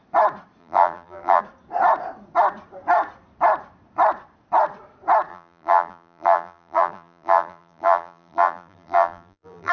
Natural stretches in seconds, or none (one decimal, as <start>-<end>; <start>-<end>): 0.0-0.6; 1.4-5.3